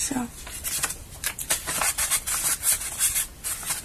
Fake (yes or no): no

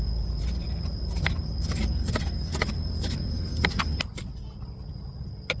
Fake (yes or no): no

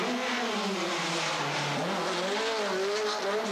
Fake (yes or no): no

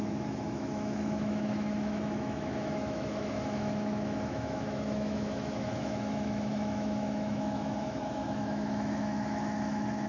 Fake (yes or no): yes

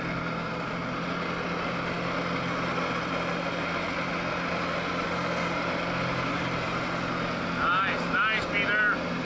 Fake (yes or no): no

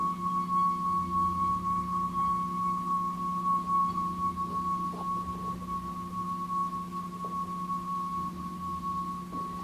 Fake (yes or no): no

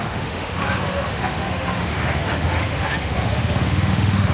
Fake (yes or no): yes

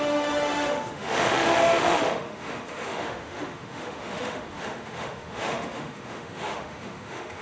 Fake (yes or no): yes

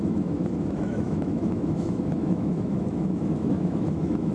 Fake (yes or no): yes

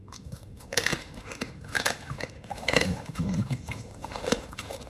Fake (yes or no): yes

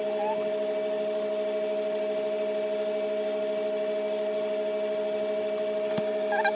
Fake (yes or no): no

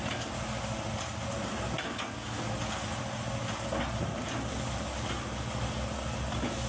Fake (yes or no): no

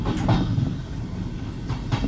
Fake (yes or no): no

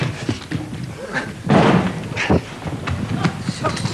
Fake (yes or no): no